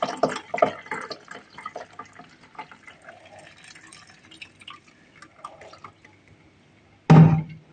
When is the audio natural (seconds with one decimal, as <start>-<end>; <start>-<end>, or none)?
0.0-7.7

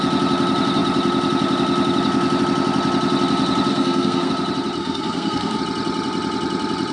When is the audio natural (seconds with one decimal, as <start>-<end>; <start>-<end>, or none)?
0.0-3.7; 4.3-4.8; 5.6-6.9

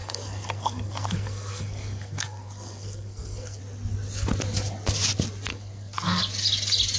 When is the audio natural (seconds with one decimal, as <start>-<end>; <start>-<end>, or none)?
3.6-5.5; 6.2-7.0

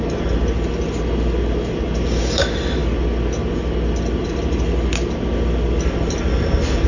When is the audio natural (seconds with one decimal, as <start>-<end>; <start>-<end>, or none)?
0.0-6.9

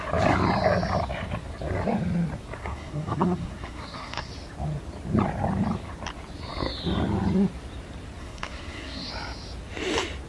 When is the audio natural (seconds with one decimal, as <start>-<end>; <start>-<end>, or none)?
0.0-2.6; 4.3-8.2; 9.1-10.3

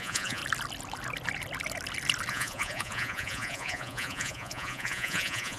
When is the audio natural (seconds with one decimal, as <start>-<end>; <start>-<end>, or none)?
0.4-2.3

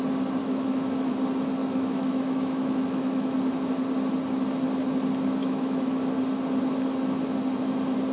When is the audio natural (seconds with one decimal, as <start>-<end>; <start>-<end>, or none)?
0.0-0.4; 1.1-1.6; 3.4-5.4; 6.0-8.1

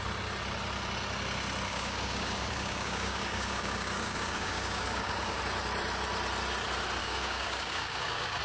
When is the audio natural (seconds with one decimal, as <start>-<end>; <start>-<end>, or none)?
0.0-1.7; 5.4-7.0